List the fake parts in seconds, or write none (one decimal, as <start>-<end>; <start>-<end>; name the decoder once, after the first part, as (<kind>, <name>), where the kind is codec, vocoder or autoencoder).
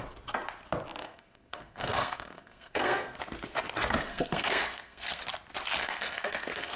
1.0-3.2 (codec, SNAC); 4.1-5.2; 5.8-6.8